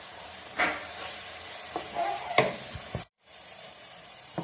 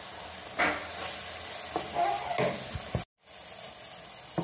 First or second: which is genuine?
second